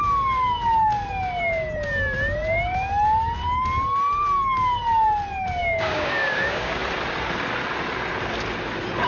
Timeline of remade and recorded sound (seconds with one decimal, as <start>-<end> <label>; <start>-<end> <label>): 0.0-5.6 recorded; 5.6-6.8 remade; 6.8-9.1 recorded